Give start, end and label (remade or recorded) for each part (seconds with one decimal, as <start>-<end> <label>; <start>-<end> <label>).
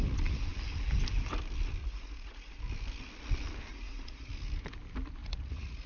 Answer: 0.0-1.8 recorded; 1.8-2.6 remade; 2.6-3.7 recorded; 3.7-4.3 remade; 4.3-5.2 recorded; 5.2-5.9 remade